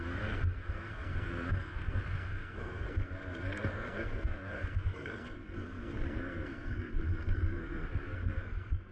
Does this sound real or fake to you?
fake